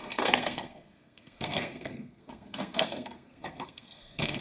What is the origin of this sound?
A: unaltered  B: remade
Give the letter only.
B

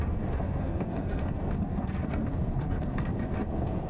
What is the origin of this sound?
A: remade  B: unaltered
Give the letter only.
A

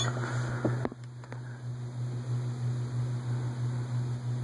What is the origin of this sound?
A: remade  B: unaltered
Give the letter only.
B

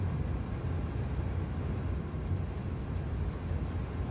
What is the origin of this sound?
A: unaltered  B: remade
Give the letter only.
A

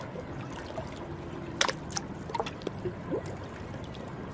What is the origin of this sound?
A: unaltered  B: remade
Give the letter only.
A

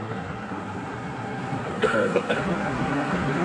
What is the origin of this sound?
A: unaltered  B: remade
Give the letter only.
B